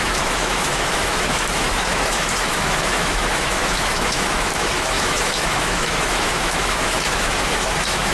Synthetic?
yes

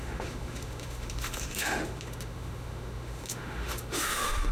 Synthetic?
yes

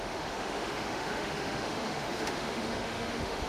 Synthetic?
yes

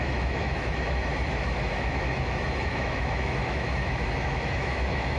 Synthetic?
yes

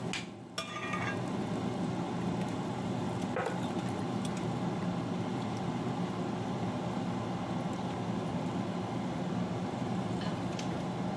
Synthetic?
no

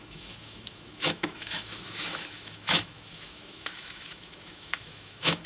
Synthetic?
yes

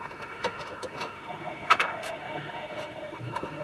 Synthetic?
yes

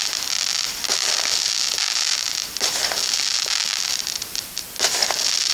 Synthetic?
no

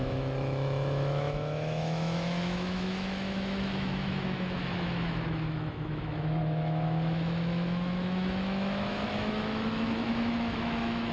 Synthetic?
yes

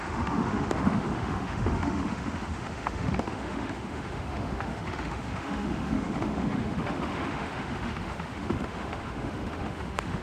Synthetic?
yes